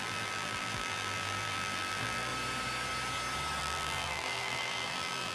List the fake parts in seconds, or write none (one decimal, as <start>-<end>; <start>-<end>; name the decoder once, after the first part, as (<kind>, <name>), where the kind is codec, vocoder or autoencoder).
0.0-2.3 (vocoder, BigVGAN v2); 3.6-5.3